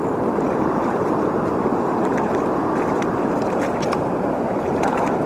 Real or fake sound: fake